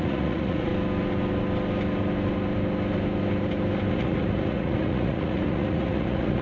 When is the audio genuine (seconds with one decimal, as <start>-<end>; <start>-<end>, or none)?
0.7-3.9